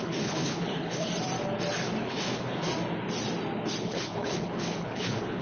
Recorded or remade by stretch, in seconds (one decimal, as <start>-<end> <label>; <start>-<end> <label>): 0.0-1.1 remade; 1.1-2.0 recorded; 2.0-2.7 remade; 2.7-3.8 recorded; 3.8-5.4 remade